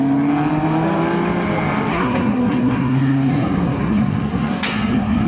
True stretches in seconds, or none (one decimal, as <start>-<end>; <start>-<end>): 0.0-1.9